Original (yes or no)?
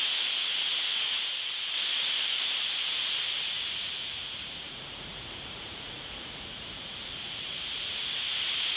no